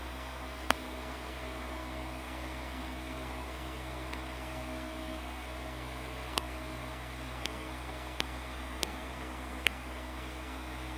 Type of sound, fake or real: fake